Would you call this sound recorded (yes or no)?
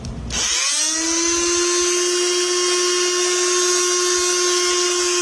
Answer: yes